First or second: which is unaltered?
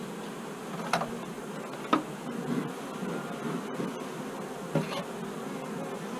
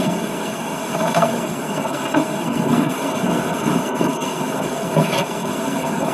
first